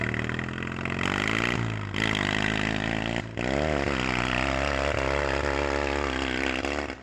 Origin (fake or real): real